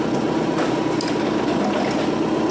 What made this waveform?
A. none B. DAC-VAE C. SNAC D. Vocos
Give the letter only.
A